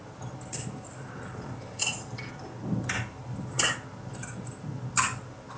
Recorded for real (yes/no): yes